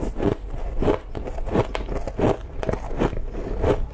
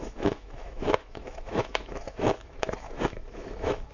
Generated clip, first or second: second